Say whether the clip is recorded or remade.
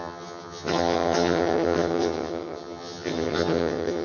remade